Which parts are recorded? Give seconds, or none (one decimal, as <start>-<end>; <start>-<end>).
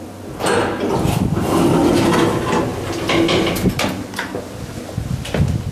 0.0-5.7